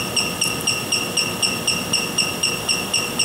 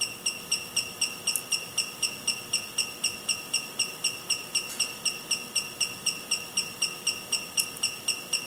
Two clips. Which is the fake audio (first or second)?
first